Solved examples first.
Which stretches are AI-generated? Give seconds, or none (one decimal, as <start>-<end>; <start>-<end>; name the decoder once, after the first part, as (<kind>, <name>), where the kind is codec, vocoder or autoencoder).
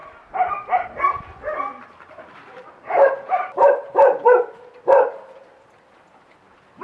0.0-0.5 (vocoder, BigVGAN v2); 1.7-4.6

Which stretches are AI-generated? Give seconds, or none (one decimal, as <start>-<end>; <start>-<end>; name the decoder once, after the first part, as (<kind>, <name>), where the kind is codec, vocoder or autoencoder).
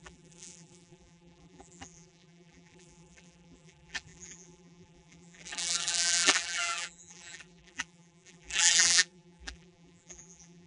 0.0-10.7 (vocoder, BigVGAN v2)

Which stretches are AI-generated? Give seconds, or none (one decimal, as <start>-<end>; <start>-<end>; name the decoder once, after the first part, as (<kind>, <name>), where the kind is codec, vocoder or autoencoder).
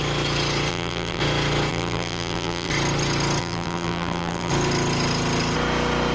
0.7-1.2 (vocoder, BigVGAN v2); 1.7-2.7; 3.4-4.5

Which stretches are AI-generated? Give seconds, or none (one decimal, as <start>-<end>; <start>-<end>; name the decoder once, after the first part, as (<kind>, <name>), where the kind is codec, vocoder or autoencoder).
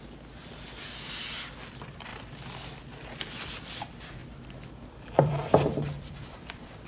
2.1-3.8 (vocoder, BigVGAN v2); 4.2-6.9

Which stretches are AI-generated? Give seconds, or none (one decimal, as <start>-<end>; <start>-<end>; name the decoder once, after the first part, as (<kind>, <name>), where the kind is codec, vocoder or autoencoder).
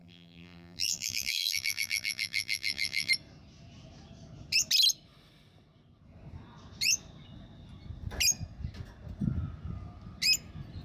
0.0-3.1 (vocoder, BigVGAN v2)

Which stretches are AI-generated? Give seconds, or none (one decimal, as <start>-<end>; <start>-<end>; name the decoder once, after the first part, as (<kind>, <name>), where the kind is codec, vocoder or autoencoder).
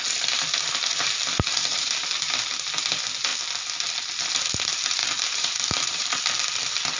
1.7-2.4 (vocoder, BigVGAN v2); 5.0-6.1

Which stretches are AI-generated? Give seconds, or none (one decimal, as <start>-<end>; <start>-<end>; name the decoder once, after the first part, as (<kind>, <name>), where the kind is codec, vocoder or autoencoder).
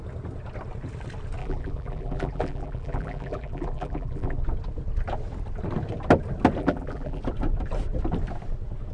1.4-4.4 (vocoder, BigVGAN v2); 6.6-7.2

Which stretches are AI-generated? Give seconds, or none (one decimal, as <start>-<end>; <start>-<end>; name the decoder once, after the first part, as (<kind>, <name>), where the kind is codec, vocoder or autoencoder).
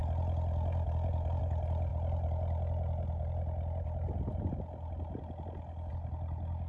none